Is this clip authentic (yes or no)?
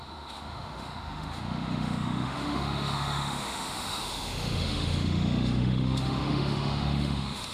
no